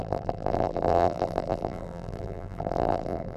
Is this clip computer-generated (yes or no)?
yes